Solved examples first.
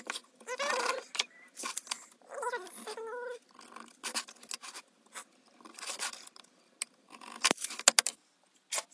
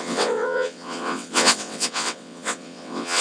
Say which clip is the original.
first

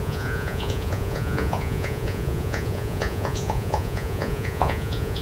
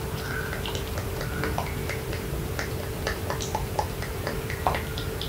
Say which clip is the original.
second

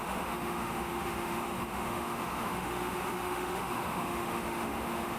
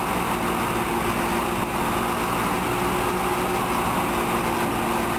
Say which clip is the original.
second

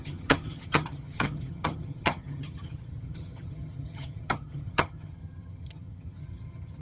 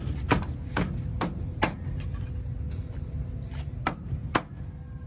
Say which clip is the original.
second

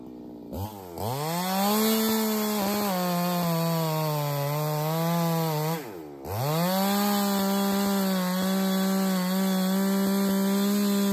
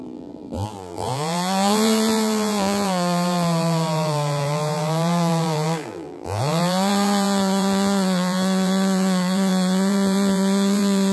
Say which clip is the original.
first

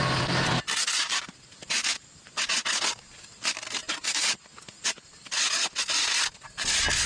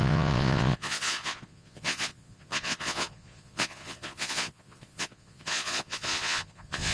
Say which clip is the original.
first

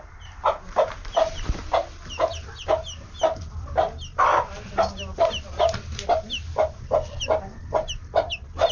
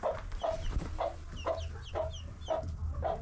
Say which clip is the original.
second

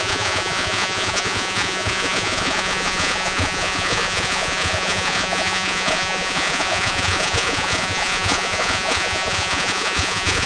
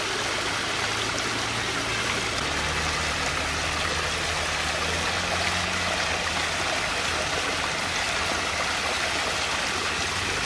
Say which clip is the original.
second